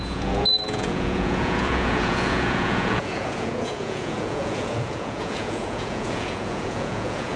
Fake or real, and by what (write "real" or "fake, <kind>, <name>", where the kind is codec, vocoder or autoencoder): fake, vocoder, Vocos